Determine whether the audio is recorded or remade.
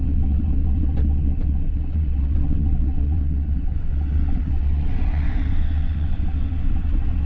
remade